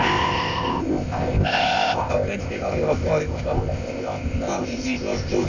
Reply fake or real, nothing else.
fake